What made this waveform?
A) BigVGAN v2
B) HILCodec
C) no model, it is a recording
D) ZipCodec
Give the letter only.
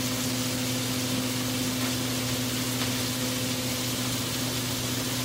C